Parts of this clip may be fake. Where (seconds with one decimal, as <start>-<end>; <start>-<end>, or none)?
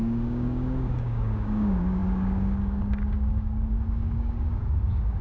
0.0-5.2